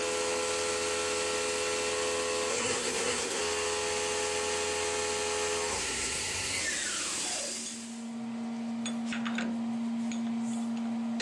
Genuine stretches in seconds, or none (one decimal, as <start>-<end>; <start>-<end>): 0.0-2.5; 3.4-5.7; 6.6-11.2